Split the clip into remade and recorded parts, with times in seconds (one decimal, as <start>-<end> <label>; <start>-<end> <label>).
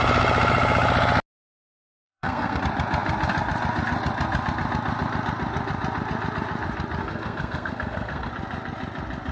0.0-1.7 recorded; 1.7-2.6 remade; 2.6-7.0 recorded; 7.0-8.3 remade; 8.3-9.3 recorded